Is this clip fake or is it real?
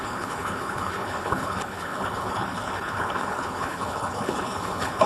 fake